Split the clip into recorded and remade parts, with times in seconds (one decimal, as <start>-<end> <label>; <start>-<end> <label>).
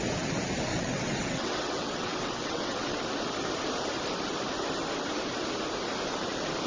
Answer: 0.0-0.7 recorded; 0.7-3.0 remade; 3.0-6.7 recorded